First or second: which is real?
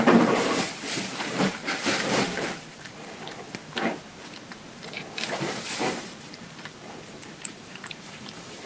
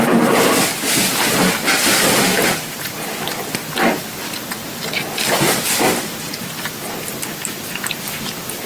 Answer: second